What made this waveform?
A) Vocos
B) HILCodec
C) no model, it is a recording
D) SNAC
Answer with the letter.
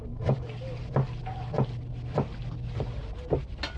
C